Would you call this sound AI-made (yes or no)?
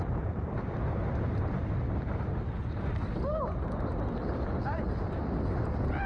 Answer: no